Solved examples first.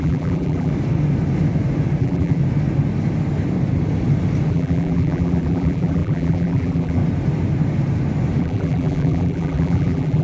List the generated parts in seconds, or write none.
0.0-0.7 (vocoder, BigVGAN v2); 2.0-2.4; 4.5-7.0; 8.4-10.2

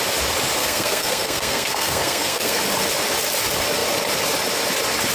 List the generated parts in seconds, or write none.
0.6-2.6 (codec, SNAC)